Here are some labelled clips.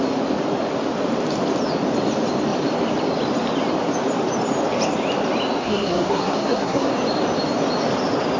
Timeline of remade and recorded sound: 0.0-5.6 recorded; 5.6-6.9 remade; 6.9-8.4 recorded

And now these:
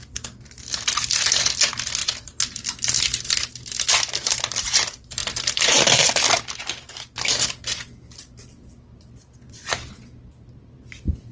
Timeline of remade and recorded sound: 0.0-11.3 recorded

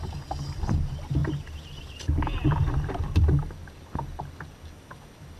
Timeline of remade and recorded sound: 0.0-1.2 recorded; 1.2-3.0 remade; 3.0-3.6 recorded; 3.6-4.5 remade; 4.5-5.4 recorded

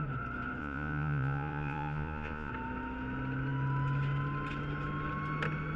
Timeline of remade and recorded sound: 0.0-0.6 recorded; 0.6-2.5 remade; 2.5-5.8 recorded